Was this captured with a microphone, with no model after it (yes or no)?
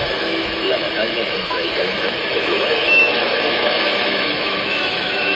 no